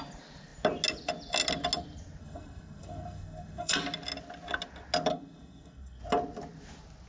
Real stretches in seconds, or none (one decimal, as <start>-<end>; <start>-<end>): 0.0-2.2; 3.8-5.1; 6.0-7.1